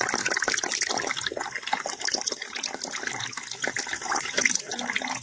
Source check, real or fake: real